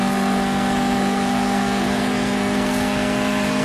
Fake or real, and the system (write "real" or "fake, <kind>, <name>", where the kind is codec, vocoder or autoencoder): fake, codec, SNAC